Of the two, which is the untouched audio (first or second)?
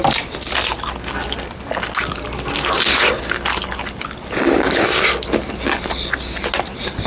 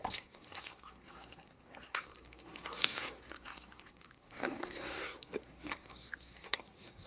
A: first